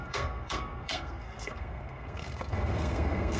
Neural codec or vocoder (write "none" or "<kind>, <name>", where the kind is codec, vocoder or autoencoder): codec, SNAC